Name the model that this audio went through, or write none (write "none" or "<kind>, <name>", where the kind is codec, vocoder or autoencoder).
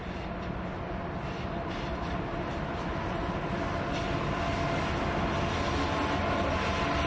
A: none